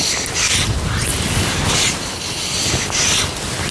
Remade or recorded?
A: recorded